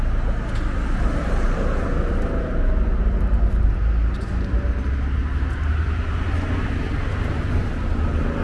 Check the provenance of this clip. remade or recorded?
recorded